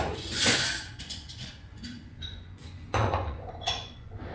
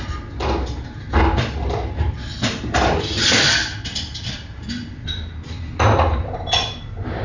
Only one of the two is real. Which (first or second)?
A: second